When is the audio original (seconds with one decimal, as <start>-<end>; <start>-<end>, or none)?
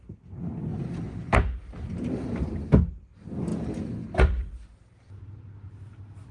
0.0-6.3